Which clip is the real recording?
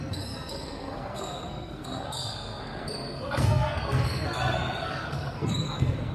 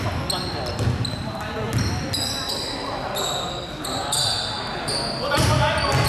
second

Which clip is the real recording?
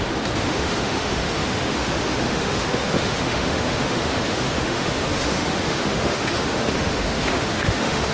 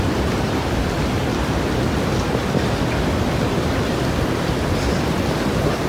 second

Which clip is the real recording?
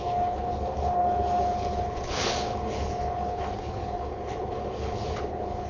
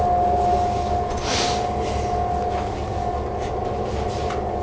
second